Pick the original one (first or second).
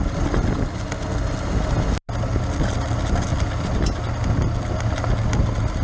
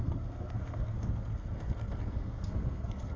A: first